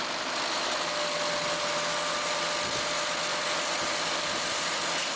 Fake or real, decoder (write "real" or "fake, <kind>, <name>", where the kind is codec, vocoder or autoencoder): real